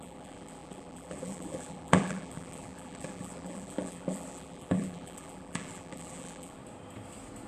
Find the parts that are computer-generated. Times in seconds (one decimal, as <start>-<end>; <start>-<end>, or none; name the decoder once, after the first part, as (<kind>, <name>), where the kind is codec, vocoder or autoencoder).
0.0-6.6 (vocoder, BigVGAN v2)